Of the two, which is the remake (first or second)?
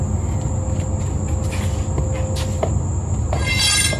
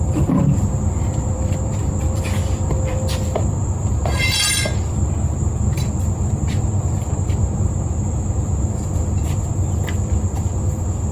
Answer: second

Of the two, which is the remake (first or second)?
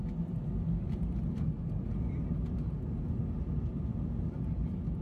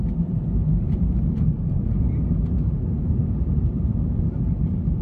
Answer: second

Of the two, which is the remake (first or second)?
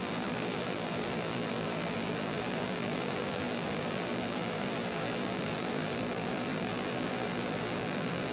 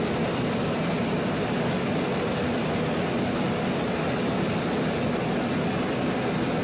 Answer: first